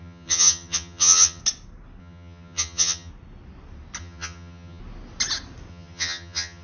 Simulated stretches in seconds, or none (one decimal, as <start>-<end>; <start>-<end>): 0.0-1.4; 2.0-3.1; 4.0-4.8; 5.7-6.6